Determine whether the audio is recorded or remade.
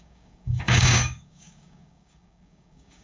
remade